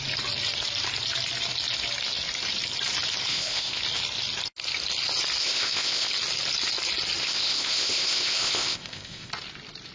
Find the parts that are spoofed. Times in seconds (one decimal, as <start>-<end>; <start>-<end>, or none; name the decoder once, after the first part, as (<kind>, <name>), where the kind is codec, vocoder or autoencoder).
3.3-3.8 (codec, ZipCodec); 5.4-6.1; 7.2-9.3